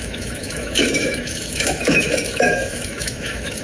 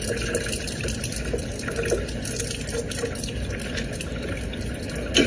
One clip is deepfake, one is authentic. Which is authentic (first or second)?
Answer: second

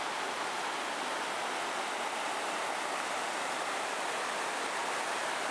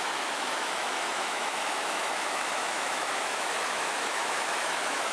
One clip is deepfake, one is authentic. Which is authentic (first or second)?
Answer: first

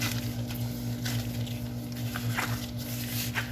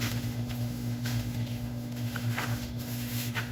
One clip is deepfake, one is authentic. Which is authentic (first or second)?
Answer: first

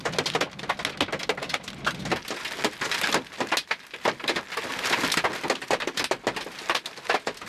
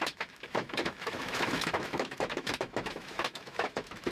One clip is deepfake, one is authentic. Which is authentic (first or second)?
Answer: first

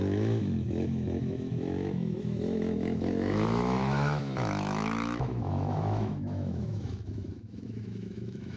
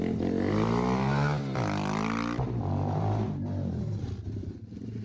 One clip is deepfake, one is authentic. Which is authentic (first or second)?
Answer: second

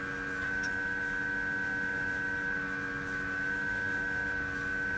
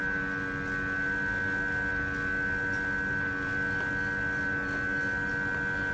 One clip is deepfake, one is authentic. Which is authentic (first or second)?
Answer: second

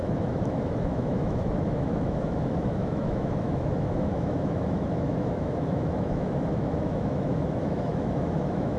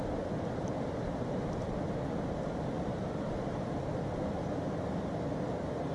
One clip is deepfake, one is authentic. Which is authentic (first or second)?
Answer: second